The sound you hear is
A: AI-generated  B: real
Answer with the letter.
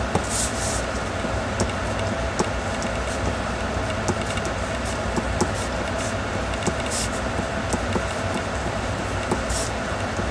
B